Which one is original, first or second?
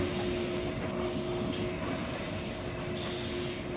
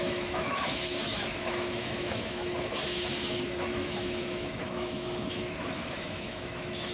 first